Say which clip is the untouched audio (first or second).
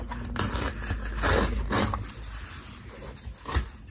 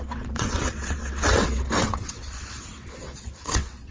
first